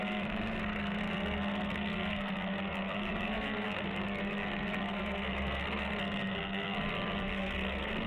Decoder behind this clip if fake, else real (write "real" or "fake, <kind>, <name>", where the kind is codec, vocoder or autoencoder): fake, codec, SNAC